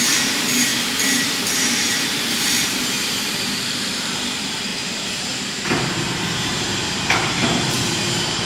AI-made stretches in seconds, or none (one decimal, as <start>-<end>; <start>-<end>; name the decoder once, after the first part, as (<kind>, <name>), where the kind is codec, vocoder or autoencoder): 0.0-0.7 (vocoder, BigVGAN v2); 1.5-8.5